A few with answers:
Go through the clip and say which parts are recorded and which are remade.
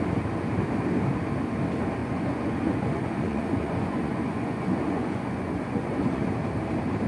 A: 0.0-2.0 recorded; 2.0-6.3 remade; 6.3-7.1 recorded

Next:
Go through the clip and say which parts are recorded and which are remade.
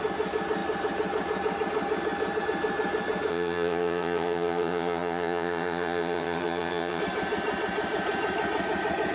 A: 0.0-3.3 recorded; 3.3-7.0 remade; 7.0-9.1 recorded